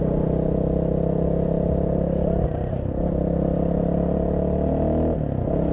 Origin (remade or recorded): recorded